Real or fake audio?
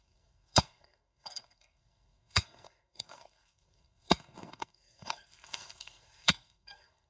fake